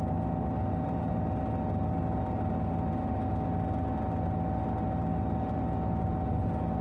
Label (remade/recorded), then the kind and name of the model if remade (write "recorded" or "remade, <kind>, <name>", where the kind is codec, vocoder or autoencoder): recorded